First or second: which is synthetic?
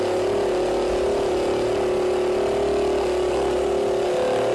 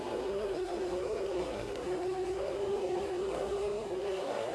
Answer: second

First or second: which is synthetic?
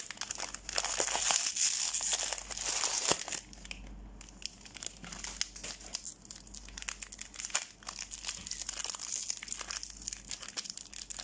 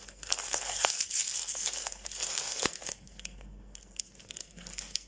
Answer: second